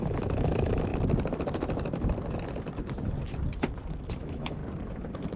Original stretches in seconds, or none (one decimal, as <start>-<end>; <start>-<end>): 0.9-4.1; 4.6-5.4